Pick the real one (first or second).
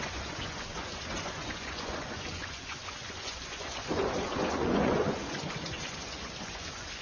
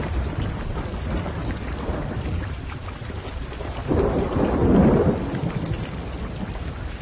second